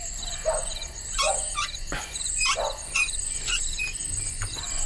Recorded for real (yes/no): no